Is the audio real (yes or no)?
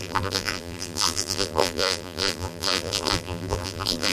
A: no